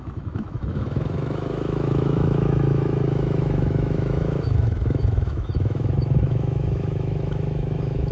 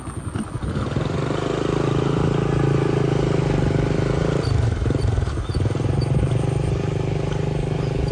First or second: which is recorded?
second